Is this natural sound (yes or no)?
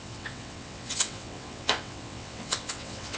no